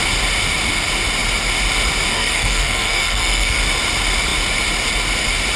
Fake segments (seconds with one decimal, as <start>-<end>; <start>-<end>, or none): 2.1-3.6